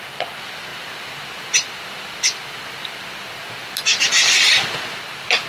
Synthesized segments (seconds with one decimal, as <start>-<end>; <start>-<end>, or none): none